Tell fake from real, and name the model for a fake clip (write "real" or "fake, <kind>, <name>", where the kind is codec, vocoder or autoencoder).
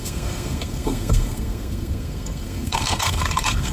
fake, codec, SNAC